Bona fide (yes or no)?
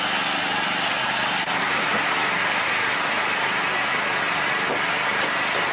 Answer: yes